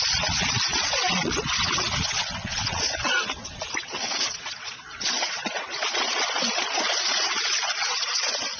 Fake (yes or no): yes